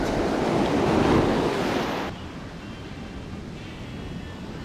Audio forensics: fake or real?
real